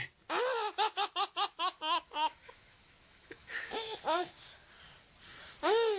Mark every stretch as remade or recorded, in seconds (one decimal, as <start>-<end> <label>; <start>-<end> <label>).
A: 0.0-1.5 recorded; 1.5-4.0 remade; 4.0-6.0 recorded